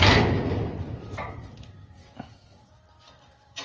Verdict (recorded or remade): recorded